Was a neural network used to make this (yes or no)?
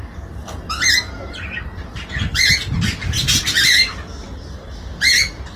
yes